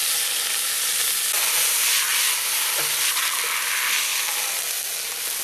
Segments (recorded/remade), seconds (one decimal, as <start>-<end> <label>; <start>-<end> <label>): 0.0-5.4 recorded